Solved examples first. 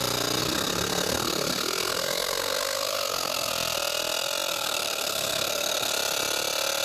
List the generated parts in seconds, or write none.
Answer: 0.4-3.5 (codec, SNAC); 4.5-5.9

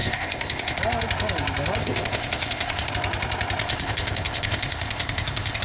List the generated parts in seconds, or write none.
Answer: 0.0-0.8 (codec, ZipCodec); 1.8-2.9; 3.6-5.6

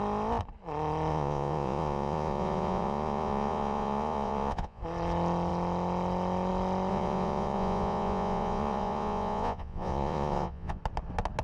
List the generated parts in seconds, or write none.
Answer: 1.1-4.8 (vocoder, Vocos); 6.9-10.8

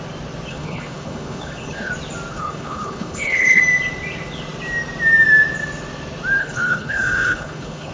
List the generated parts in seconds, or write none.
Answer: 0.5-1.9 (codec, HILCodec); 2.3-3.6; 6.4-7.9

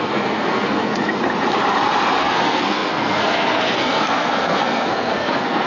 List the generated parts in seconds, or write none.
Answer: 0.0-1.2 (codec, SNAC); 2.2-5.7

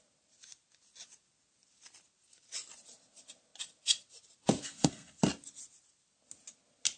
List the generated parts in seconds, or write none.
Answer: 4.6-5.2 (codec, SNAC)

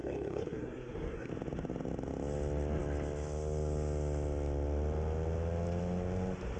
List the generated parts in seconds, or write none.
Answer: 0.0-1.3 (codec, SNAC)

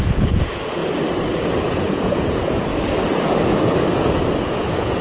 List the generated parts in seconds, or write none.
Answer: 0.0-0.8 (vocoder, Vocos); 1.7-2.7; 4.4-5.0